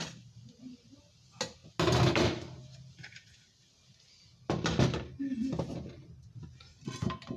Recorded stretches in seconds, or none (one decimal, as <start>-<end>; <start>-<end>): 0.0-7.4